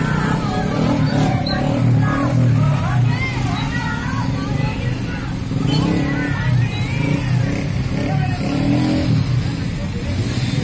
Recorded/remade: recorded